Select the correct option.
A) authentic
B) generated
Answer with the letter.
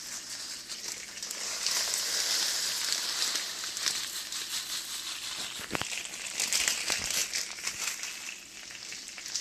A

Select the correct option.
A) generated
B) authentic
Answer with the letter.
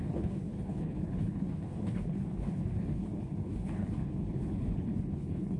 A